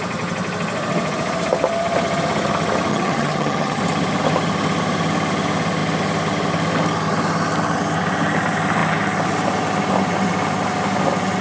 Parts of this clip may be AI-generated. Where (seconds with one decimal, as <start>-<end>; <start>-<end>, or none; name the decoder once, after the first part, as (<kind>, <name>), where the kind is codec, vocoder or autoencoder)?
2.9-3.8 (vocoder, HiFi-GAN)